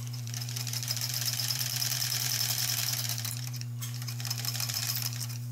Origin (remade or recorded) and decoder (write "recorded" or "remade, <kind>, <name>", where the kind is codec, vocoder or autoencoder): remade, vocoder, BigVGAN v2